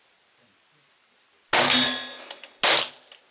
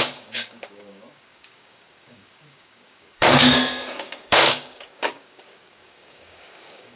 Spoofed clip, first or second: second